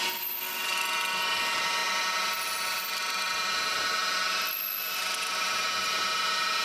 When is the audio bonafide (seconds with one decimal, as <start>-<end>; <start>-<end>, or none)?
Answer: 0.0-6.6